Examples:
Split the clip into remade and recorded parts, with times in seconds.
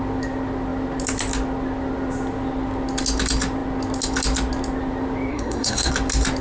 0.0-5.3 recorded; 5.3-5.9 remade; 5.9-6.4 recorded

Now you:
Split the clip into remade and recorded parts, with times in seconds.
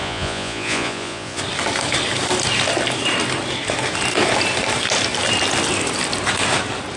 0.0-1.4 remade; 1.4-7.0 recorded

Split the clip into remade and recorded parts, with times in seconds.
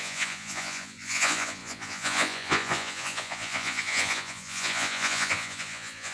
0.0-6.1 remade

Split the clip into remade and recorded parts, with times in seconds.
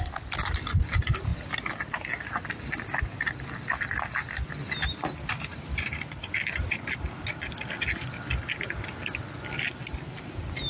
0.0-5.5 recorded; 5.5-7.5 remade; 7.5-10.7 recorded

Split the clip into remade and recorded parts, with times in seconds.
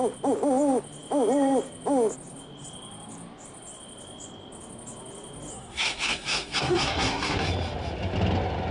0.0-5.5 recorded; 5.5-7.5 remade; 7.5-8.7 recorded